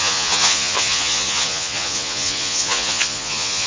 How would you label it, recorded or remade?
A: remade